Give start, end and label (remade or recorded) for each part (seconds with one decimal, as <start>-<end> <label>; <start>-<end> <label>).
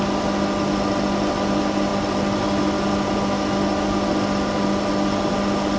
0.0-5.8 recorded